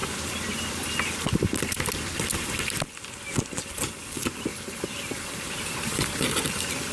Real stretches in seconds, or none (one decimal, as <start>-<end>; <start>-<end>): 0.0-4.5